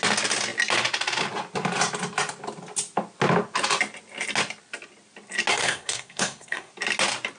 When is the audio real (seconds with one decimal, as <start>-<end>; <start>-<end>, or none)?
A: 0.0-5.5; 6.7-7.4